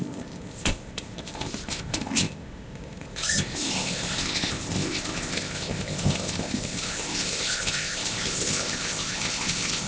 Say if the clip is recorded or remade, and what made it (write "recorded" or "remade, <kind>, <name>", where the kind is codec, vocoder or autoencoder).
remade, codec, ZipCodec